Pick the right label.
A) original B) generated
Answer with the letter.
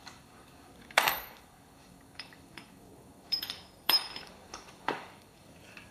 B